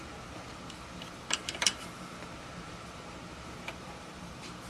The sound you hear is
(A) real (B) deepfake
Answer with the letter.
B